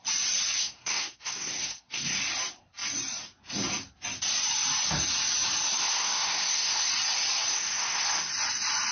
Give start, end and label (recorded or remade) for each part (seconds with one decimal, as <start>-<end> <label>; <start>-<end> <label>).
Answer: 0.0-0.6 recorded; 0.6-2.2 remade; 2.2-5.8 recorded; 5.8-6.9 remade; 6.9-7.5 recorded; 7.5-8.3 remade; 8.3-8.9 recorded